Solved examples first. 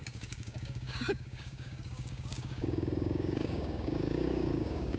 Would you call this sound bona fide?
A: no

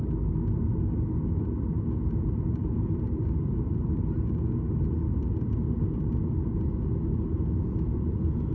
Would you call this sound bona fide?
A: yes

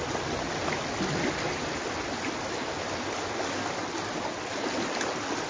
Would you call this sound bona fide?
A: yes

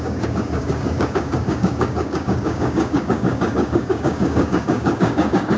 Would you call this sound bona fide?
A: no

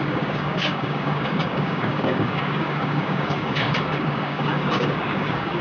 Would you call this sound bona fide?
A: no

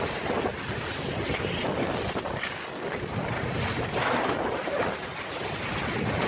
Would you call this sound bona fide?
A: yes